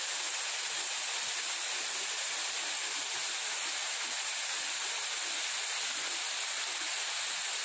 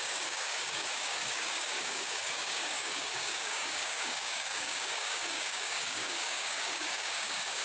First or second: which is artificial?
second